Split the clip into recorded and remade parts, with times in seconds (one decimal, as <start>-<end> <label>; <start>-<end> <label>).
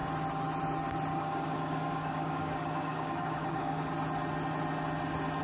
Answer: 0.0-1.1 recorded; 1.1-3.8 remade; 3.8-5.4 recorded